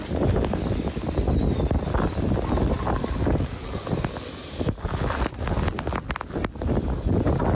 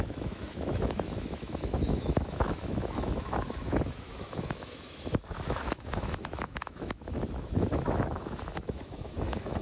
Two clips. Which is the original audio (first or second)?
first